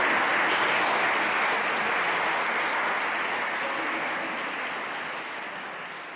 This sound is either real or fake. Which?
real